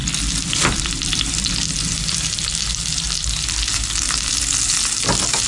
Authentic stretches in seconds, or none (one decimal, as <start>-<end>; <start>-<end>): 0.0-5.5